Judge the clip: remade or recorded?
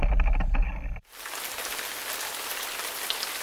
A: recorded